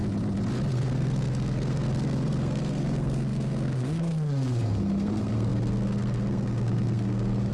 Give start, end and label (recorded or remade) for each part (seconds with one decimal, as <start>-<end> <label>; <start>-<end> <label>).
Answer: 0.0-0.7 recorded; 0.7-7.5 remade